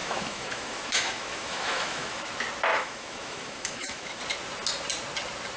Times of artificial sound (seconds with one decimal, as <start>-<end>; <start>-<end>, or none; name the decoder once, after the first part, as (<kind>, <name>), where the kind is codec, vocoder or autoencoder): 0.0-2.3 (autoencoder, DAC-VAE); 2.7-4.2